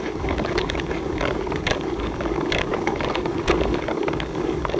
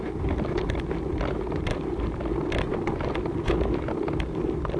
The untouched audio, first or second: second